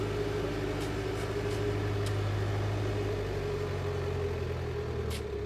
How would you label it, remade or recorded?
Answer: recorded